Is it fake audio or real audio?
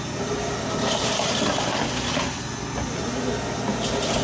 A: real